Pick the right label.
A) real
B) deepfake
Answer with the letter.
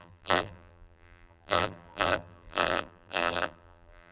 B